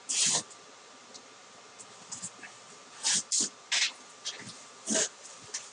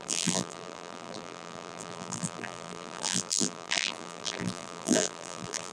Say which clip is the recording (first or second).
first